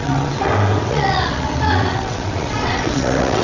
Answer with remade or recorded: remade